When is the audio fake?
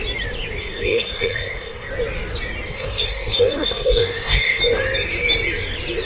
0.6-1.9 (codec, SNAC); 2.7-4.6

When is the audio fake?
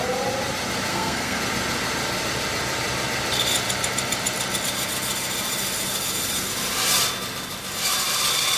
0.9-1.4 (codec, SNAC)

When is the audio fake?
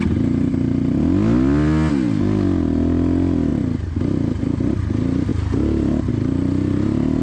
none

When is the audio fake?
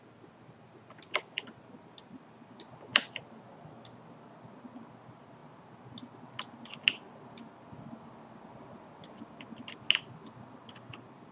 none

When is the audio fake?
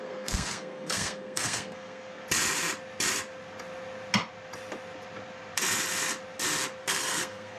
0.0-2.2 (codec, SNAC); 6.8-7.6